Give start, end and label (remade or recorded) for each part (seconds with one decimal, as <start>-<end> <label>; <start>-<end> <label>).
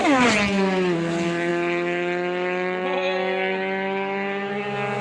0.0-5.0 recorded